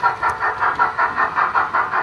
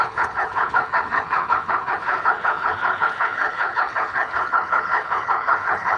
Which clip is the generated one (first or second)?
second